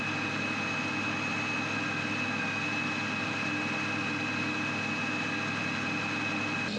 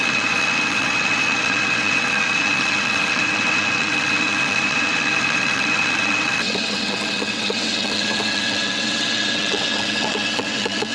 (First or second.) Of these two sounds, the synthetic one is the second